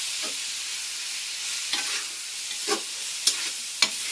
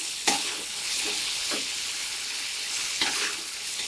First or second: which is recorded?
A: first